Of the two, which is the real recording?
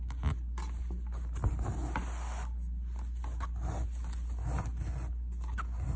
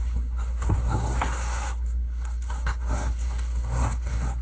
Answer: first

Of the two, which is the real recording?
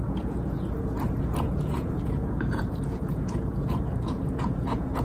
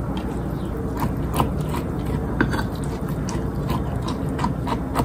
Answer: second